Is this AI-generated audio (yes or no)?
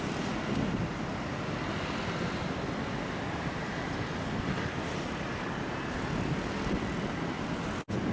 no